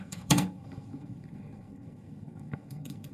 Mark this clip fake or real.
fake